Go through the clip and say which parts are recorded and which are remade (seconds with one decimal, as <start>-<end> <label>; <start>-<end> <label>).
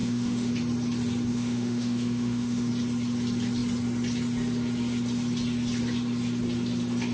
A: 0.0-0.5 remade; 0.5-1.3 recorded; 1.3-2.7 remade; 2.7-7.1 recorded